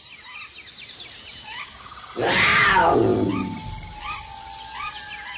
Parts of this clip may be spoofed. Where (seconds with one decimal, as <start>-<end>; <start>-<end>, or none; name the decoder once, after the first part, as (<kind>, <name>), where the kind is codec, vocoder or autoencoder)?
none